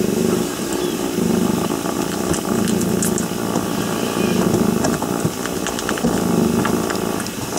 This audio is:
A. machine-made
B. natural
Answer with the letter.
B